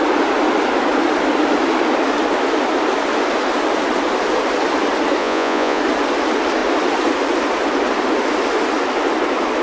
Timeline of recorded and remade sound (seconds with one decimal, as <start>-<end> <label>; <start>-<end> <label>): 0.0-5.2 recorded; 5.2-5.8 remade; 5.8-9.6 recorded